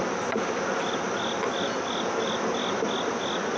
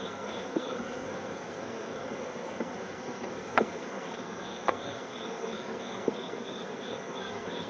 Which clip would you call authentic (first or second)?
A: first